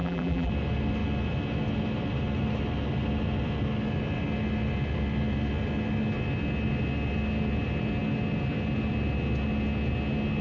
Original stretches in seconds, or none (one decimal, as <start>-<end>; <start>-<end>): 0.5-10.4

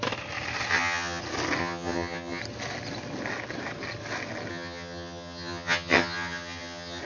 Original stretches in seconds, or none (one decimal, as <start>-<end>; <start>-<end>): 0.0-0.7; 1.2-1.6; 2.4-4.5

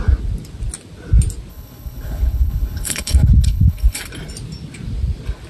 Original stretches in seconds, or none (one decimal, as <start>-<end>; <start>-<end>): 0.0-1.5; 4.0-5.5

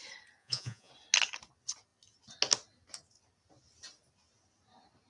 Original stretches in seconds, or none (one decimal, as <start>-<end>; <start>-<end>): 0.0-0.4; 0.9-5.1

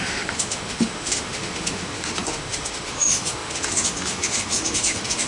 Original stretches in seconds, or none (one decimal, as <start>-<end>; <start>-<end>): none